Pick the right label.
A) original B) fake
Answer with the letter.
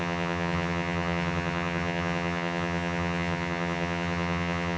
B